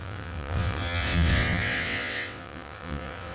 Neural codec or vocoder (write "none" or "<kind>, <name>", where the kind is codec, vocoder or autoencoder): vocoder, WaveNeXt